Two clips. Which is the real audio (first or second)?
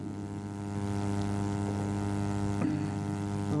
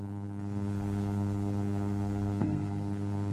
first